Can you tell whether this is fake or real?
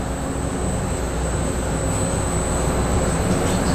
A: real